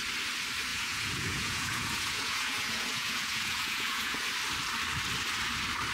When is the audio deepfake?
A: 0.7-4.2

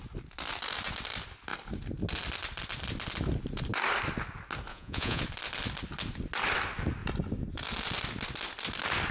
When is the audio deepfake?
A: 4.7-5.2

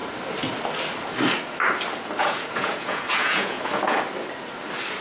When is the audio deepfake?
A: 2.2-4.0

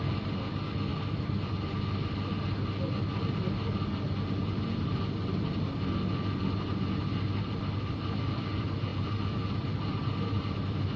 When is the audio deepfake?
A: none